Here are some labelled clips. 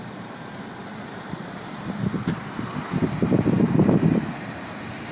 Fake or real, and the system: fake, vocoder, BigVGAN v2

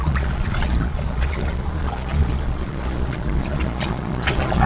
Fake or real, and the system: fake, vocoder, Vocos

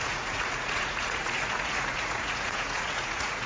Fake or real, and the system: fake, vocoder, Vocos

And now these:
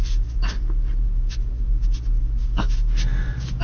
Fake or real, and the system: real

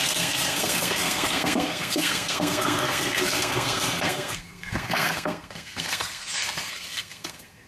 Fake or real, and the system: fake, codec, SNAC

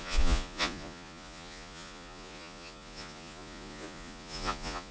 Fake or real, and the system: fake, vocoder, Vocos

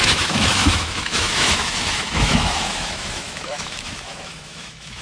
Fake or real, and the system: fake, autoencoder, DAC-VAE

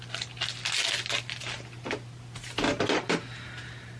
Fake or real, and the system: real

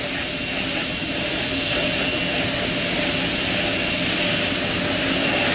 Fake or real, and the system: real